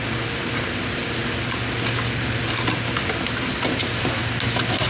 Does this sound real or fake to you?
real